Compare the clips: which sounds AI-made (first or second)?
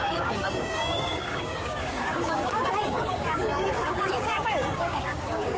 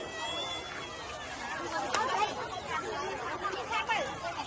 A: first